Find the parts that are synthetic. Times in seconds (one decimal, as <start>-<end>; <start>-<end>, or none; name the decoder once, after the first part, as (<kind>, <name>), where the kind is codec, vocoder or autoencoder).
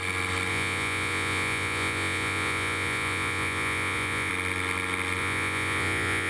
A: 0.5-4.3 (vocoder, Vocos); 5.2-6.3